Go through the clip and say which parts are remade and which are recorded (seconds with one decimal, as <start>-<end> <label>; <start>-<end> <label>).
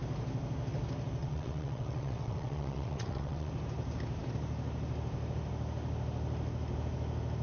0.0-1.2 recorded; 1.2-3.5 remade; 3.5-7.4 recorded